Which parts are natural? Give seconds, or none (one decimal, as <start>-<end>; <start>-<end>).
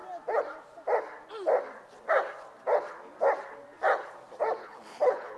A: 0.0-4.6